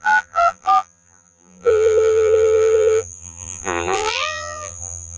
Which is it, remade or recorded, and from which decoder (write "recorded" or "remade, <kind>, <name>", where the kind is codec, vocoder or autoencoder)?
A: remade, vocoder, BigVGAN v2